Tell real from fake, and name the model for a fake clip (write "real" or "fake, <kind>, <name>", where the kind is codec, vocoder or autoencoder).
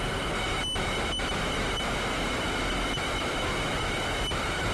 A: real